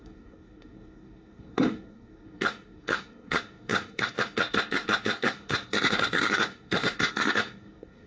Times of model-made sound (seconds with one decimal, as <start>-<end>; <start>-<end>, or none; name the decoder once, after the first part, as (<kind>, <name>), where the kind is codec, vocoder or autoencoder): 0.0-8.1 (codec, SNAC)